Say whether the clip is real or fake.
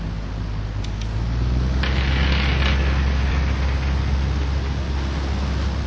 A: real